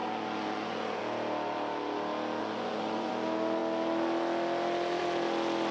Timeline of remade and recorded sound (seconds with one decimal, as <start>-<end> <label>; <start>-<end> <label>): 0.0-1.0 remade; 1.0-2.4 recorded; 2.4-3.1 remade; 3.1-5.7 recorded